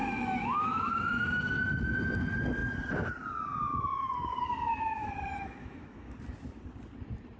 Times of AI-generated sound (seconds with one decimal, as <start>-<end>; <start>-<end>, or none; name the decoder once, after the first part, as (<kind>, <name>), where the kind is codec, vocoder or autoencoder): 0.0-1.6 (autoencoder, DAC-VAE); 3.7-5.1; 5.6-6.1